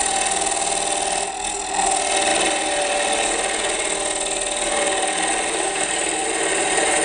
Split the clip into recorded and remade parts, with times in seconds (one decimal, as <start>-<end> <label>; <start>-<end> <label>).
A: 0.0-7.0 recorded